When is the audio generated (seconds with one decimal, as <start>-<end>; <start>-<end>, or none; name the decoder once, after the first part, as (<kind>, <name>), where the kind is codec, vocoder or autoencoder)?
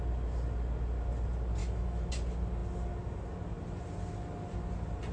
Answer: 1.6-2.1 (autoencoder, DAC-VAE)